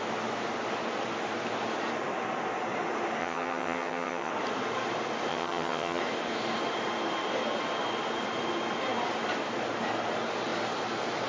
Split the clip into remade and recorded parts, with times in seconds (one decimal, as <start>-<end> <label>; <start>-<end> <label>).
0.0-3.2 recorded; 3.2-4.3 remade; 4.3-5.3 recorded; 5.3-6.0 remade; 6.0-11.3 recorded